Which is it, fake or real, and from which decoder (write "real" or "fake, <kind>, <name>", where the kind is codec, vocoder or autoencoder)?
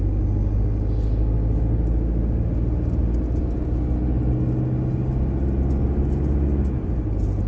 real